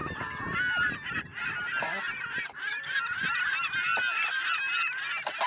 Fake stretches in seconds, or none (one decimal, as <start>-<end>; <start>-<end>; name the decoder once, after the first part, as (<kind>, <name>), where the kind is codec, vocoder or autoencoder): none